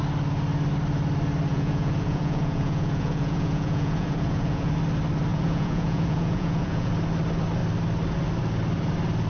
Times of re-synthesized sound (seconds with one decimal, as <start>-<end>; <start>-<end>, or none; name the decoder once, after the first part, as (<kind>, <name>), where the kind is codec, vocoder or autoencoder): 1.5-4.7 (vocoder, Vocos); 5.3-6.9